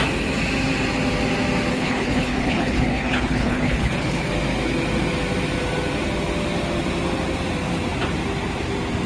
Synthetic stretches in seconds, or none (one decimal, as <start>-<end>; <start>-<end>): 1.7-4.3